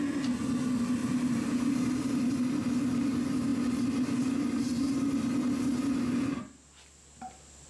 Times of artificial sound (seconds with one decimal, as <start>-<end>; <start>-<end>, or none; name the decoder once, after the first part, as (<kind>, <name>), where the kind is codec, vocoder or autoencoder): 1.0-2.3 (vocoder, BigVGAN v2)